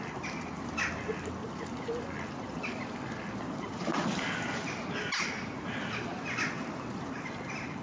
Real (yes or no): yes